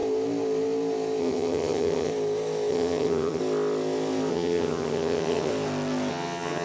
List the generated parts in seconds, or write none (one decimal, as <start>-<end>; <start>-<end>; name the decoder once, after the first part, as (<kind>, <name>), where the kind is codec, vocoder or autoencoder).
1.2-2.1 (vocoder, HiFi-GAN); 2.7-3.4; 4.3-5.5; 6.1-6.6